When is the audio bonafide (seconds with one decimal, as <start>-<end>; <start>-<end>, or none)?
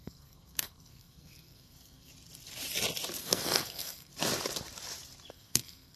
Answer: 2.1-3.2; 4.1-5.3